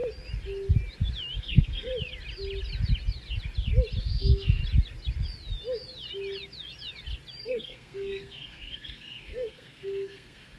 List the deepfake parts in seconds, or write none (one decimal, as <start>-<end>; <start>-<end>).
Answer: 1.4-1.9; 4.0-4.6; 7.4-10.6